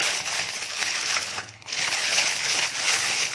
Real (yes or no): no